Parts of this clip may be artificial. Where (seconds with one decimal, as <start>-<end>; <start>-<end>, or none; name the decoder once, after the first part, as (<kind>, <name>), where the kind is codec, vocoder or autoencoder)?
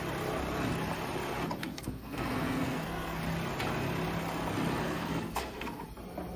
1.6-3.2 (codec, SNAC); 4.8-5.8